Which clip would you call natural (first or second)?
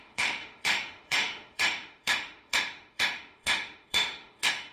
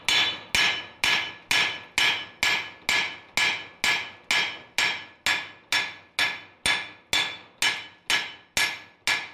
second